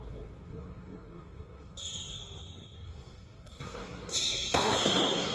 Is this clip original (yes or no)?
no